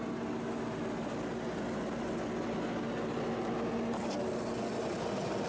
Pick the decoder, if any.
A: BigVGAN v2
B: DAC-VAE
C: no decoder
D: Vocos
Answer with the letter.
C